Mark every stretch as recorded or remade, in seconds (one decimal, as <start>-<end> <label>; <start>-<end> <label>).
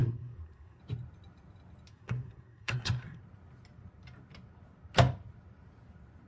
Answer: 0.0-0.8 remade; 0.8-1.9 recorded; 1.9-3.2 remade; 3.2-6.3 recorded